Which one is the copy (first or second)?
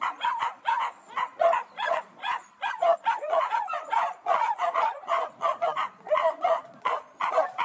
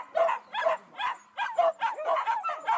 first